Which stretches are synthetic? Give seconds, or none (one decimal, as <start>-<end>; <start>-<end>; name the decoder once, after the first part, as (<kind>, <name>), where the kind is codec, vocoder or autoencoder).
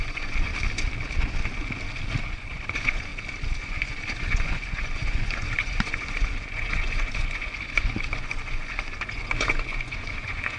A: 0.0-0.5 (vocoder, Vocos); 2.2-3.1; 3.6-10.6